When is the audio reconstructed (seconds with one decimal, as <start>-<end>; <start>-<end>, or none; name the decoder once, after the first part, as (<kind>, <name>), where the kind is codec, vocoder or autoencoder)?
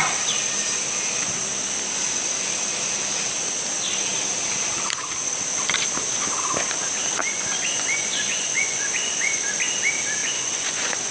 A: 7.2-9.4 (vocoder, Vocos); 10.2-11.1